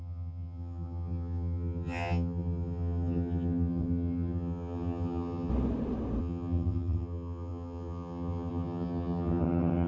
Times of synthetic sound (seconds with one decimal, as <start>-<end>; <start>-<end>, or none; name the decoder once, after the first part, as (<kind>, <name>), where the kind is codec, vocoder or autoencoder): 0.0-5.5 (vocoder, HiFi-GAN); 6.2-9.9